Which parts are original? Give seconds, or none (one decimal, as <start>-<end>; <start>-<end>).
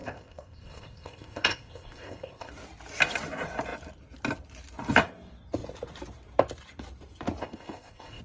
2.5-7.4